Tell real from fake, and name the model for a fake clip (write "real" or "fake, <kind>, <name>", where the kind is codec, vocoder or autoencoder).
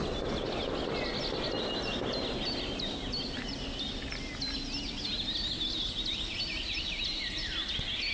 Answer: real